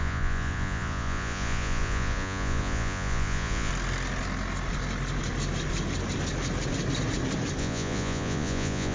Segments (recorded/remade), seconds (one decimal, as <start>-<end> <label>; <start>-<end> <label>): 0.0-3.7 remade; 3.7-7.6 recorded; 7.6-8.9 remade